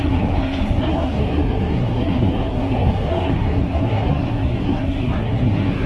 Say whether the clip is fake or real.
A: fake